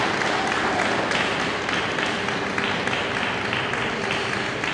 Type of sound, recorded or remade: recorded